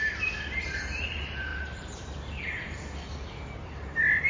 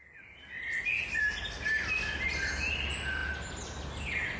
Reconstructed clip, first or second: first